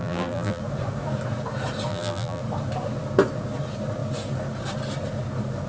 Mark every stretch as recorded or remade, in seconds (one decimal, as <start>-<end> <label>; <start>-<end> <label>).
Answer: 0.0-0.6 remade; 0.6-1.9 recorded; 1.9-2.4 remade; 2.4-5.7 recorded